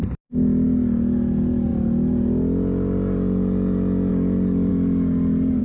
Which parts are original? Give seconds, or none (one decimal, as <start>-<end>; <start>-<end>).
0.0-5.6